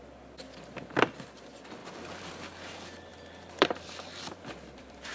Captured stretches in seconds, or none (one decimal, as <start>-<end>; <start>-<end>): 0.0-1.8; 2.3-3.1